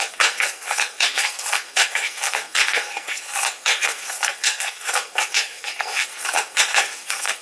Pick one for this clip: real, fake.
fake